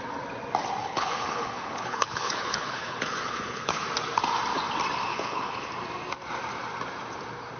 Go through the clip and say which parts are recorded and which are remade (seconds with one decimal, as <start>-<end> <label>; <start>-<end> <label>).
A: 0.0-0.8 recorded; 0.8-3.8 remade; 3.8-5.1 recorded; 5.1-5.7 remade; 5.7-7.6 recorded